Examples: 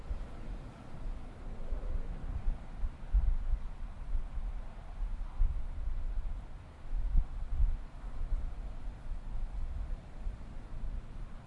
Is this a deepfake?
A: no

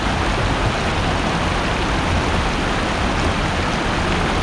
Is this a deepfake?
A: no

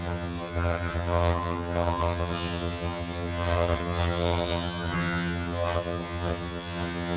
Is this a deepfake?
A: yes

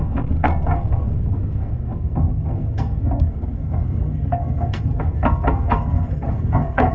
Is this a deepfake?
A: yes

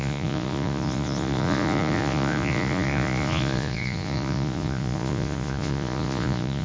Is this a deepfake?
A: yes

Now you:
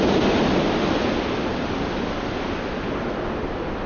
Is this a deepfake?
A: no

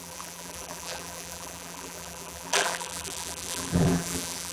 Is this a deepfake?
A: yes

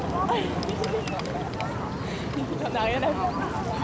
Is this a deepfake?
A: no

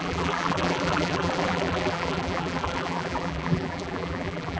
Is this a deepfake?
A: yes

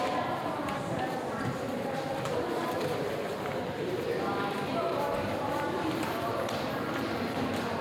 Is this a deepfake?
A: yes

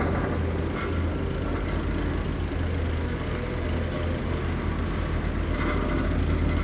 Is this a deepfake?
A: no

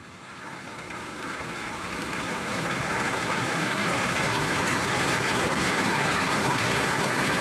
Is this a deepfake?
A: yes